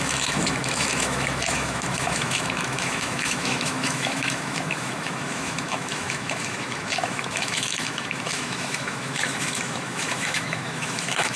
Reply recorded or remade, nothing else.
remade